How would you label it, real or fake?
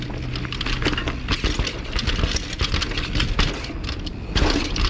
real